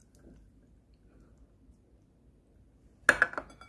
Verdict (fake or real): real